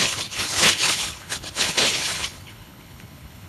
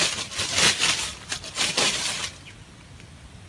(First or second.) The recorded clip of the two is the second